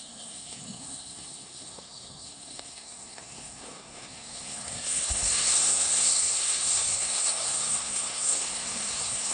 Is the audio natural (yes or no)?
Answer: no